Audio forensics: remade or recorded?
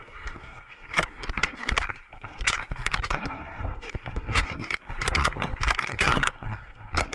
remade